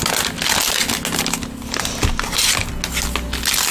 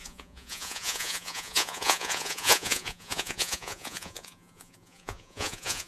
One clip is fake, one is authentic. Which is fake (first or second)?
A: second